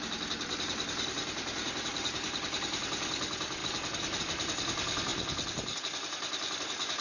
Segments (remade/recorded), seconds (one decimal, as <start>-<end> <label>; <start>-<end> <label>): 0.0-7.0 recorded